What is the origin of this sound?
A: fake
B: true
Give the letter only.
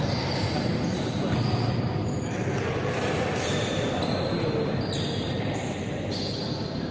B